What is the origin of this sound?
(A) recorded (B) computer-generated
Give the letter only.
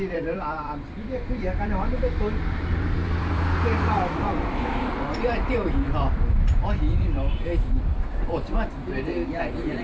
B